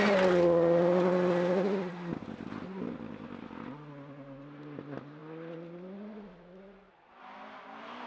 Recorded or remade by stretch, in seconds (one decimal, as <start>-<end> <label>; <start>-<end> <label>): 0.0-8.1 recorded